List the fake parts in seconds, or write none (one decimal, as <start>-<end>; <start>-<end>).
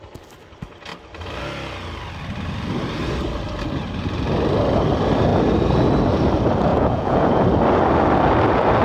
6.7-7.4